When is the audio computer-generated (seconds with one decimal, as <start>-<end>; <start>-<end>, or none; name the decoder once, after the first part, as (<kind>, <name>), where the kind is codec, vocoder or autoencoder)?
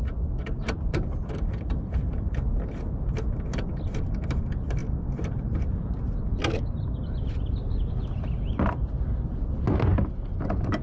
none